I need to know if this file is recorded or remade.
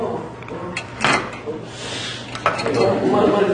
recorded